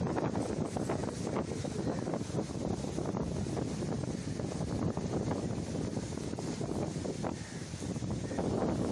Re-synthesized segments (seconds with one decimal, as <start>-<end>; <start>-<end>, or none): 0.0-1.0; 2.3-8.9

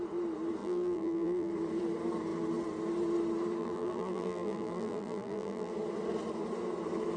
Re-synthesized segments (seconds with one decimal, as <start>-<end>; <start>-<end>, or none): 0.6-1.5; 3.6-5.7